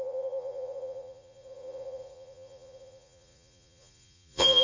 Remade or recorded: remade